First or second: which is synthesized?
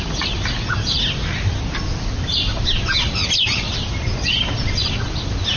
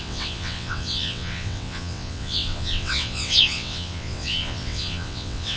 second